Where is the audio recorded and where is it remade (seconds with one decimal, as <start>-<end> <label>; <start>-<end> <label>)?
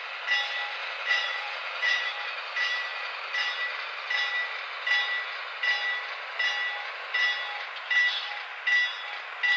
0.0-0.8 recorded; 0.8-2.1 remade; 2.1-9.6 recorded